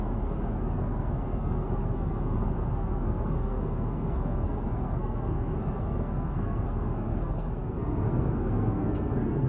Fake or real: fake